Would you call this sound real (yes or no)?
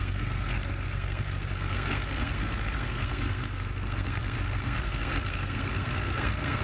no